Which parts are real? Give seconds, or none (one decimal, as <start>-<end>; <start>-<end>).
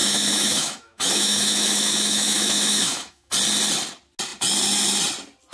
3.3-5.5